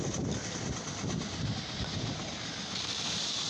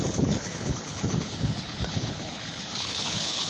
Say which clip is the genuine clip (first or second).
first